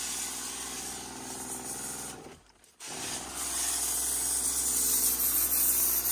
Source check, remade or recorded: recorded